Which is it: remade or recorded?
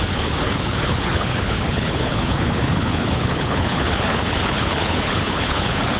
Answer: remade